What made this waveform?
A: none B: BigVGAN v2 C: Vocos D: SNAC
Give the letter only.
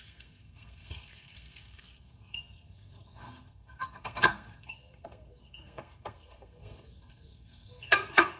D